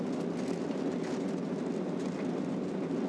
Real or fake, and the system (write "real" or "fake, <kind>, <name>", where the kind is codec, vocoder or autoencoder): real